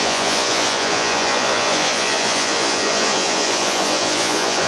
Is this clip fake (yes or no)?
yes